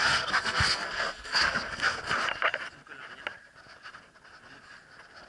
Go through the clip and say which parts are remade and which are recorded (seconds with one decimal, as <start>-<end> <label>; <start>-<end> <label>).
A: 0.0-2.0 remade; 2.0-5.3 recorded